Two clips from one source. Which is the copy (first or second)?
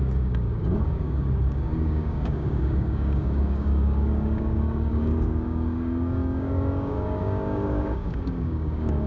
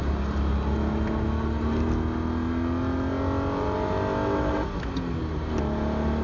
first